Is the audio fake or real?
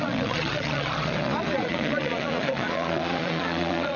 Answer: fake